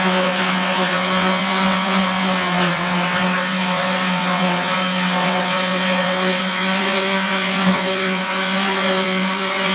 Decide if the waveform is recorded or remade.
remade